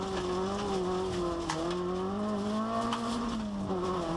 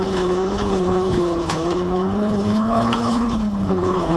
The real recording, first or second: first